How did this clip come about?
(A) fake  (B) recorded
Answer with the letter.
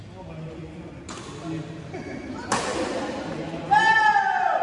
B